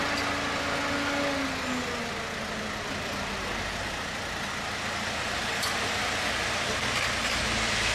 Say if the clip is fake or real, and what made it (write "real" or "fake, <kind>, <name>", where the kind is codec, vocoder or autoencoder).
real